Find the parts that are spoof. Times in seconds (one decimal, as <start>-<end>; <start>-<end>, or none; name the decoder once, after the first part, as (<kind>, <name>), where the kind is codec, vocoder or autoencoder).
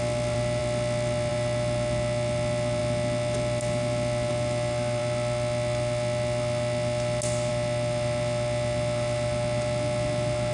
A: none